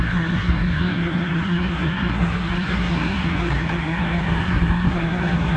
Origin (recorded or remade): remade